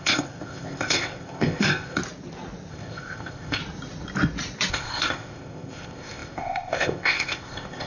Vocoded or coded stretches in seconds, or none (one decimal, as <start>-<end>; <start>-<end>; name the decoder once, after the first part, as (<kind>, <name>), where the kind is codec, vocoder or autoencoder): 0.0-2.0 (codec, ZipCodec); 2.7-3.6; 4.7-7.9